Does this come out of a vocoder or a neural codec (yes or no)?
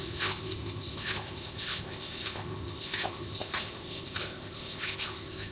yes